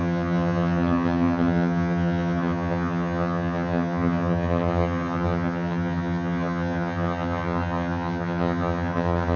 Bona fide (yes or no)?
no